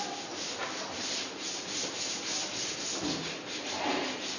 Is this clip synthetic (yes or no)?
yes